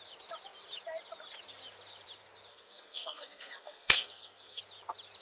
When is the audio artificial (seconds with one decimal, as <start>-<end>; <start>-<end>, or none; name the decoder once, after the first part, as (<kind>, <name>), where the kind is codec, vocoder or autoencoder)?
2.5-4.6 (codec, SNAC)